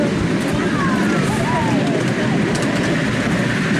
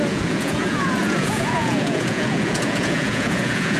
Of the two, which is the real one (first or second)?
first